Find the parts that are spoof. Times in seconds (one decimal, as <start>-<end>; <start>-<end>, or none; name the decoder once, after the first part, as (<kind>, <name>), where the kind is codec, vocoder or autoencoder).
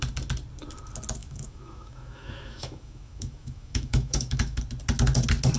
1.2-4.6 (autoencoder, DAC-VAE)